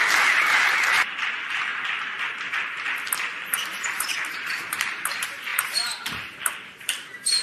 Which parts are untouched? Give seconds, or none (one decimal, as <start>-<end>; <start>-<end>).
1.7-3.3